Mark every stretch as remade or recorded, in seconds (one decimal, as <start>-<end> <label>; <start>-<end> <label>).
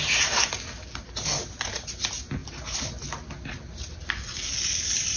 0.0-5.2 recorded